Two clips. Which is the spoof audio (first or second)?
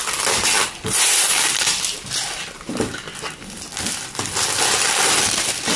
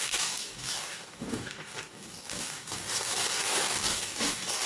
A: second